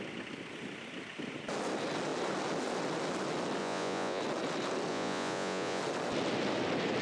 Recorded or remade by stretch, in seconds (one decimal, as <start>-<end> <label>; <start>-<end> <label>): 0.0-3.6 recorded; 3.6-4.2 remade; 4.2-4.9 recorded; 4.9-5.8 remade; 5.8-7.0 recorded